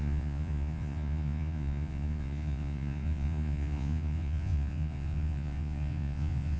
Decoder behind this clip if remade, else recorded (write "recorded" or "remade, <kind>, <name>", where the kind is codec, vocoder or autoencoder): remade, vocoder, Vocos